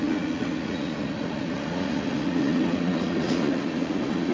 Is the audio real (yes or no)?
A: no